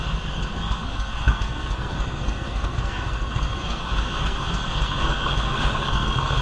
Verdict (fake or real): fake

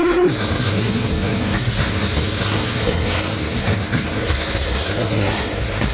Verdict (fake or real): fake